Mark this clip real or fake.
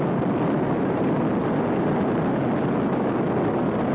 real